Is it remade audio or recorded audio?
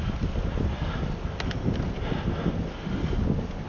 recorded